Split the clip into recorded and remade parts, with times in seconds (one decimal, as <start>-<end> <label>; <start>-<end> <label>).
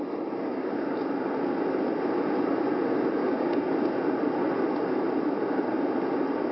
0.0-3.2 recorded; 3.2-3.7 remade; 3.7-6.5 recorded